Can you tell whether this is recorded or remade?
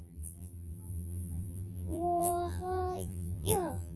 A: remade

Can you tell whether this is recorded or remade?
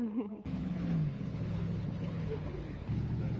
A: remade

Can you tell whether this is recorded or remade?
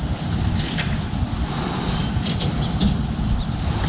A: recorded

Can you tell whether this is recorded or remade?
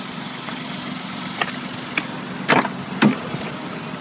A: recorded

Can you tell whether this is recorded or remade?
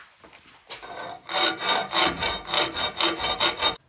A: recorded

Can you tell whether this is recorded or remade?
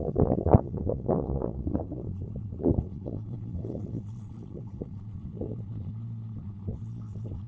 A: remade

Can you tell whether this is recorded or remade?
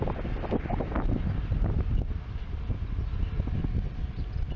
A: recorded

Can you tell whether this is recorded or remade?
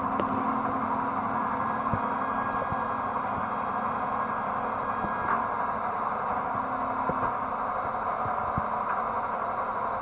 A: recorded